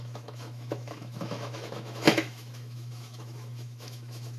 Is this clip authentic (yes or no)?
no